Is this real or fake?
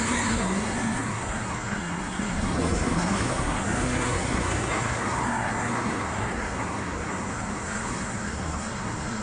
fake